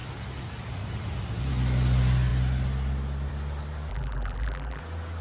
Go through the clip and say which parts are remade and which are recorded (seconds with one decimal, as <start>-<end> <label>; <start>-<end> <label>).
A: 0.0-3.9 recorded; 3.9-4.8 remade; 4.8-5.2 recorded